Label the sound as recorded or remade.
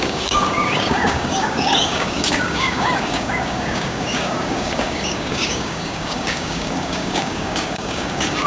remade